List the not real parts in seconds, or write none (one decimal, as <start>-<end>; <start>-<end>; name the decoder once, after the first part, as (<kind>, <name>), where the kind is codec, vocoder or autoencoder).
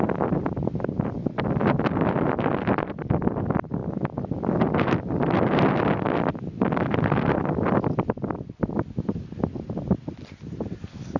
none